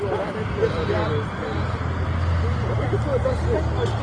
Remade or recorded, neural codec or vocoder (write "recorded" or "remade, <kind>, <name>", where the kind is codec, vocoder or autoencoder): recorded